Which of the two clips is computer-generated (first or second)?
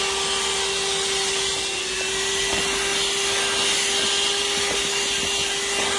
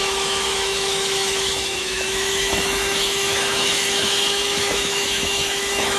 second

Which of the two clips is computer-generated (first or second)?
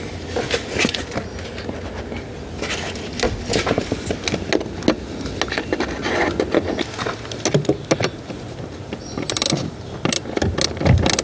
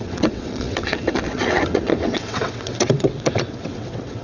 second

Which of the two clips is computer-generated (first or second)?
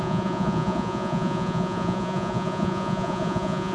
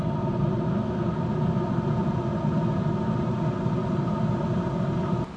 first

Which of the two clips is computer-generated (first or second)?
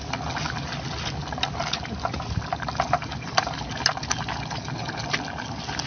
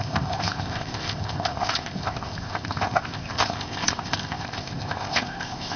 second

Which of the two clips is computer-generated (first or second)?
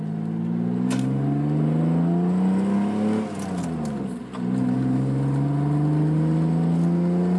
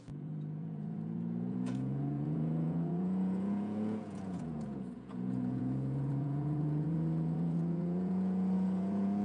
second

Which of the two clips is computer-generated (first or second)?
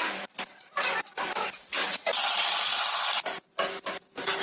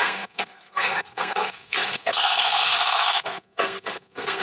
second